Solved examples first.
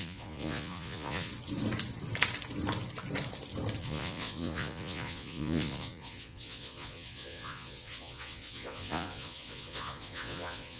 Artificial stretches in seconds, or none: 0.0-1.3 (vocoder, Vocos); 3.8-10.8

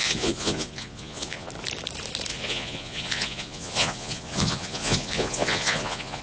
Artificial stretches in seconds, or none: 0.0-1.5 (vocoder, Vocos); 2.3-6.2

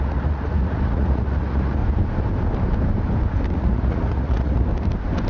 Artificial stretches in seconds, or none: 0.0-1.8 (vocoder, Vocos); 3.6-4.7